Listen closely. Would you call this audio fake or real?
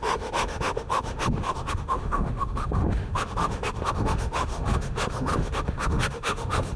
fake